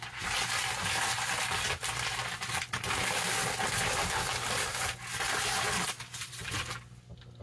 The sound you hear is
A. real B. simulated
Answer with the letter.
A